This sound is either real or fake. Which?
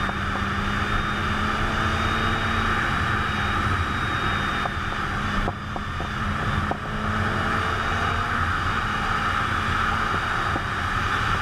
real